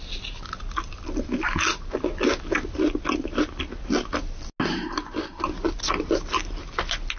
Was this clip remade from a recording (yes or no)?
no